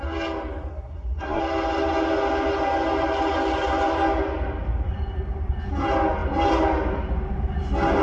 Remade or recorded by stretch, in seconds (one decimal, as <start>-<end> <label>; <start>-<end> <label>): 0.0-0.7 recorded; 0.7-1.4 remade; 1.4-8.0 recorded